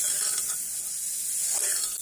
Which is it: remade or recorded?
recorded